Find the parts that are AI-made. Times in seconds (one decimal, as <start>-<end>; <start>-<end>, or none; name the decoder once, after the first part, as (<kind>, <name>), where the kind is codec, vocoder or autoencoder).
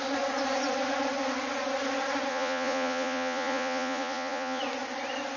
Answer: 2.3-4.6 (vocoder, Vocos)